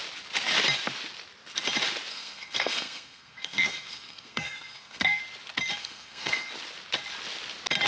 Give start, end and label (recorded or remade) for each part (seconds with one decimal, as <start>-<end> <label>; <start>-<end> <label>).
0.0-2.1 recorded; 2.1-5.2 remade; 5.2-5.8 recorded; 5.8-6.5 remade; 6.5-7.9 recorded